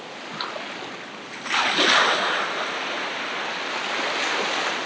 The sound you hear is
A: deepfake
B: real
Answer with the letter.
B